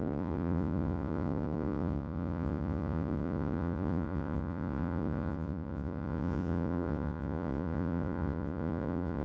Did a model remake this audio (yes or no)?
yes